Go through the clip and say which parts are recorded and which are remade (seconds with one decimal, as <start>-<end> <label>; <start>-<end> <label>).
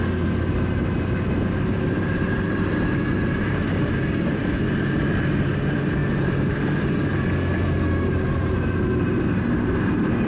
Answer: 0.0-10.3 recorded